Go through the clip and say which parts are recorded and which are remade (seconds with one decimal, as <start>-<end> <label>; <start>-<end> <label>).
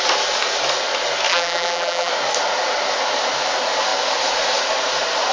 0.0-1.3 recorded; 1.3-2.1 remade; 2.1-5.3 recorded